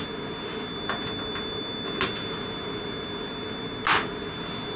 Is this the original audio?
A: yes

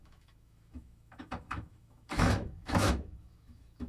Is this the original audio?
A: no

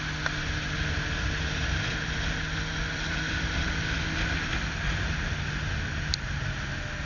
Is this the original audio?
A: yes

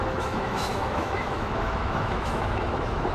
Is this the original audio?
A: no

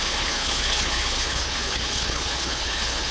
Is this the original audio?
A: no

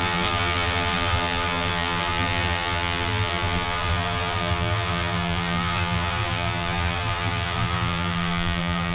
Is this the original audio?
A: no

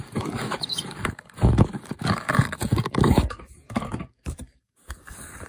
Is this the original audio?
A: no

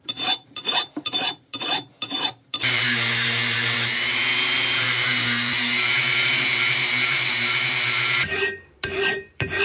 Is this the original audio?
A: no